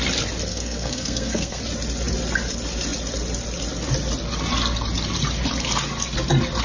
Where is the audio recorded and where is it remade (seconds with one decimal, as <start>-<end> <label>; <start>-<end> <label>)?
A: 0.0-0.5 recorded; 0.5-1.6 remade; 1.6-6.6 recorded